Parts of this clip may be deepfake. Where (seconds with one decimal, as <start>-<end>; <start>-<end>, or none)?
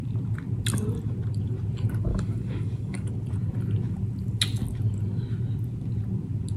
2.1-3.1